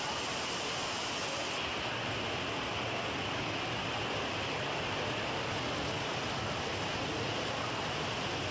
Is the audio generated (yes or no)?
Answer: no